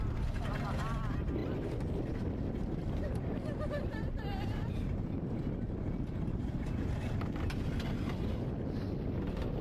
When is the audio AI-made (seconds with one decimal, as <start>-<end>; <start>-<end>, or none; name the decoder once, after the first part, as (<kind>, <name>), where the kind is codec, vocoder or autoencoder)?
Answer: 2.8-7.7 (vocoder, BigVGAN v2)